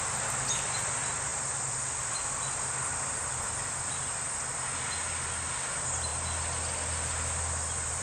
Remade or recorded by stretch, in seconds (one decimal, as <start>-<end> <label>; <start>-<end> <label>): 0.0-8.0 recorded